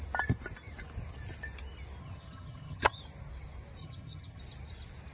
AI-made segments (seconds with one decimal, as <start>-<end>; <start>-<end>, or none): 2.0-3.0; 3.8-4.4